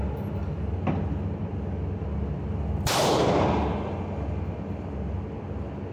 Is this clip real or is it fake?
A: real